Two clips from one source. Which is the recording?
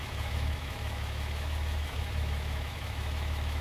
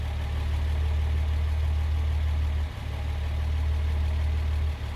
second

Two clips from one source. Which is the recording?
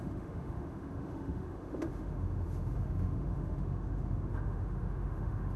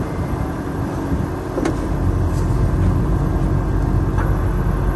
second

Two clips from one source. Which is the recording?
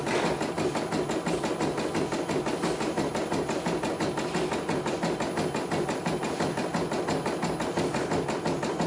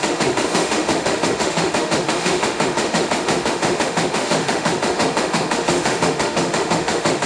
first